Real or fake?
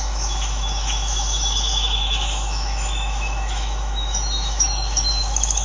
fake